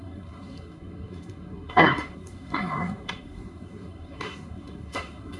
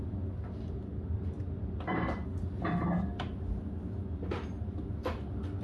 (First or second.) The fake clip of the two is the first